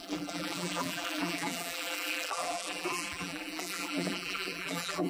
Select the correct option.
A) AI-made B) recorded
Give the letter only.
A